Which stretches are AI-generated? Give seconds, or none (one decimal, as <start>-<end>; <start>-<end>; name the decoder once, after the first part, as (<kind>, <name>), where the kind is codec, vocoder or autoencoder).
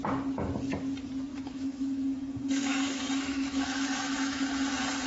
1.3-4.4 (autoencoder, DAC-VAE)